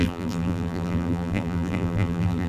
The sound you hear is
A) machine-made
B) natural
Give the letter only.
A